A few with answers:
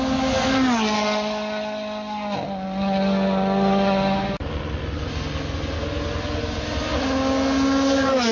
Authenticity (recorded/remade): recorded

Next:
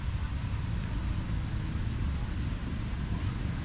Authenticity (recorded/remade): recorded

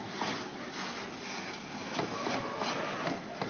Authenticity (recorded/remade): recorded